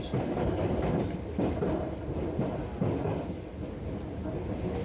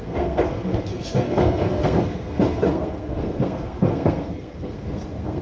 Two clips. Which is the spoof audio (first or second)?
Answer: second